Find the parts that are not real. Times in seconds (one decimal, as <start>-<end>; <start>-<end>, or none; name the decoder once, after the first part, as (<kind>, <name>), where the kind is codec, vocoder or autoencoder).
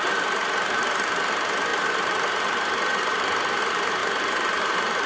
0.0-4.0 (vocoder, BigVGAN v2)